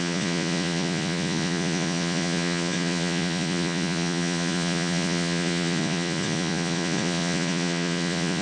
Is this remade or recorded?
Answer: remade